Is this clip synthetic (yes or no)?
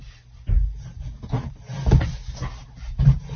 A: no